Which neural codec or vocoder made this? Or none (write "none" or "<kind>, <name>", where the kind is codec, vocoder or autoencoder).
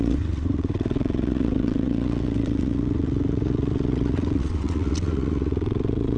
vocoder, WaveNeXt